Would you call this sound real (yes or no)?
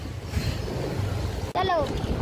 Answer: yes